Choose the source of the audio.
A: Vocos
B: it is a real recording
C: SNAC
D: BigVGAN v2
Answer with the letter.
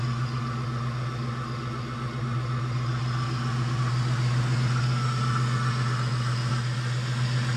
B